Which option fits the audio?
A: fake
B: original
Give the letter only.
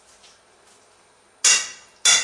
B